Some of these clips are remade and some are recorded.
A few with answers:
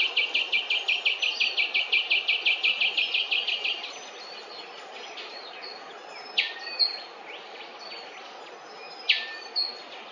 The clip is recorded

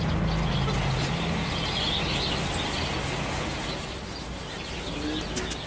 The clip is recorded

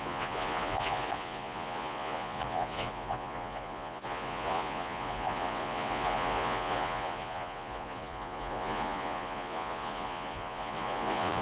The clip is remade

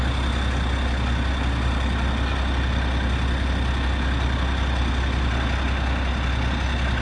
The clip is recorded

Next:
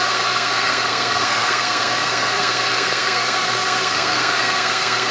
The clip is remade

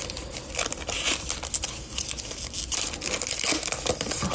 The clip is recorded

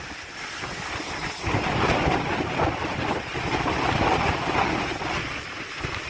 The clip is recorded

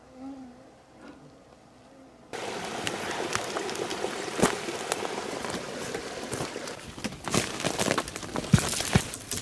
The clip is recorded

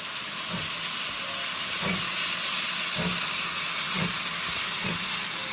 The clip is recorded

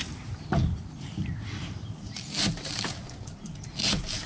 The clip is recorded